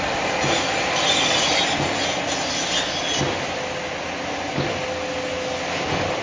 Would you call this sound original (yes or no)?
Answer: yes